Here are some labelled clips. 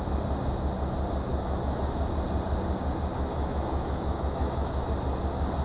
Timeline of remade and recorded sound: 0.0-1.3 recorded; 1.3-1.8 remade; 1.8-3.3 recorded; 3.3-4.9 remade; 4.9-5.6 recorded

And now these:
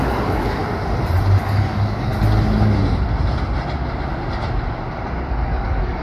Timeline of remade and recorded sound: 0.0-0.6 remade; 0.6-1.4 recorded; 1.4-2.1 remade; 2.1-5.3 recorded; 5.3-6.0 remade

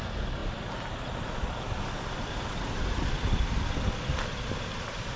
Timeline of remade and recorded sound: 0.0-5.2 recorded

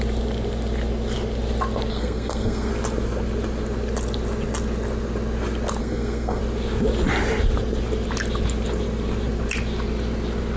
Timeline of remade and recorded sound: 0.0-1.9 recorded; 1.9-2.7 remade; 2.7-5.8 recorded; 5.8-6.4 remade; 6.4-10.6 recorded

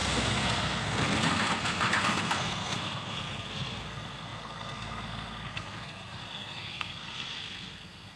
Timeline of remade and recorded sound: 0.0-8.2 remade

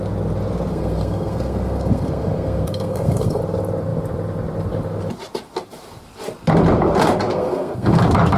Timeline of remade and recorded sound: 0.0-0.7 recorded; 0.7-3.4 remade; 3.4-7.3 recorded; 7.3-8.0 remade; 8.0-8.4 recorded

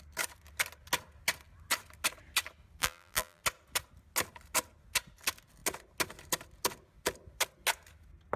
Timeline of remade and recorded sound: 0.0-2.8 recorded; 2.8-3.4 remade; 3.4-8.4 recorded

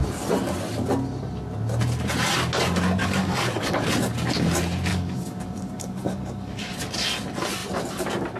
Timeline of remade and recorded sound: 0.0-3.0 recorded; 3.0-3.9 remade; 3.9-4.9 recorded; 4.9-6.7 remade; 6.7-8.4 recorded